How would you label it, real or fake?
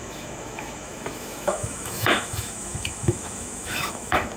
fake